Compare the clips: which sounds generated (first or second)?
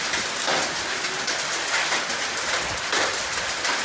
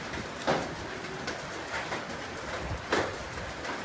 second